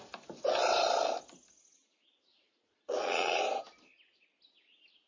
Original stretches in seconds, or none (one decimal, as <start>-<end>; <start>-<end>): 0.0-2.3; 3.4-5.1